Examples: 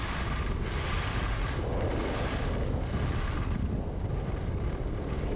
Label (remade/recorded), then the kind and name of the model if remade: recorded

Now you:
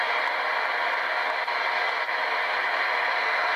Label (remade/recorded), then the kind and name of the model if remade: recorded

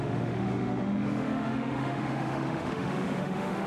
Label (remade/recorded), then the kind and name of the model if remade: remade, autoencoder, DAC-VAE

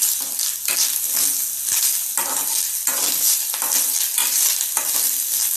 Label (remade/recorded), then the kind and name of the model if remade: recorded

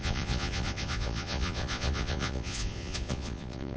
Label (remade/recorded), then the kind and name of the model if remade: remade, vocoder, Vocos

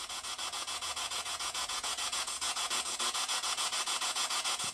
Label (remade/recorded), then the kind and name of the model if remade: remade, vocoder, Vocos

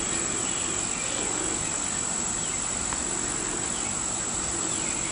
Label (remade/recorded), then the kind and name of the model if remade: recorded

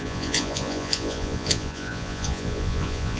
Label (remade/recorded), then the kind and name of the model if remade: remade, vocoder, Vocos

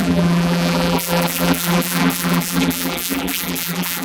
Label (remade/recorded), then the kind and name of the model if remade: remade, vocoder, BigVGAN v2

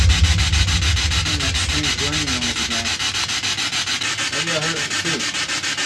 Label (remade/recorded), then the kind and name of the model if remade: recorded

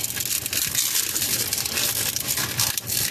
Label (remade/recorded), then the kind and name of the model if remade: recorded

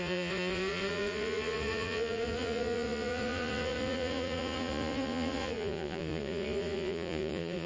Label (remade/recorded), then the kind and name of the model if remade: remade, vocoder, Vocos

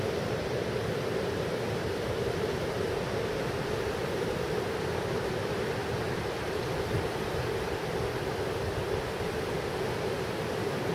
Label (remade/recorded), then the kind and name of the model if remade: recorded